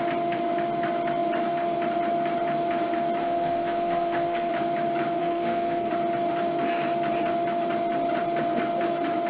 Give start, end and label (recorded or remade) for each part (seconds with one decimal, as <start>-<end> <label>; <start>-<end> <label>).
0.0-3.2 recorded; 3.2-4.5 remade; 4.5-5.2 recorded; 5.2-5.9 remade; 5.9-9.3 recorded